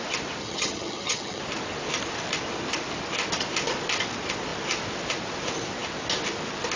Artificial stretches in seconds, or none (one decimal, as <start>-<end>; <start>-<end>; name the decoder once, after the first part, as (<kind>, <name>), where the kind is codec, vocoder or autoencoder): 0.4-1.4 (vocoder, HiFi-GAN)